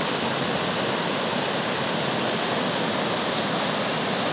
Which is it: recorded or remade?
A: recorded